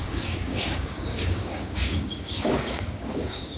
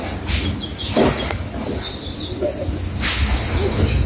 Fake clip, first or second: first